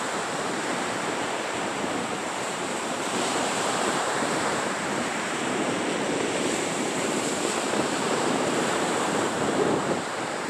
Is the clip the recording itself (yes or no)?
no